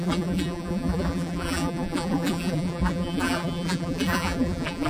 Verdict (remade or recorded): remade